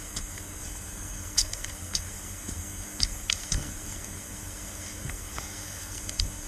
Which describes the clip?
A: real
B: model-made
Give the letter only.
B